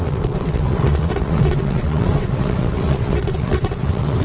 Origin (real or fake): fake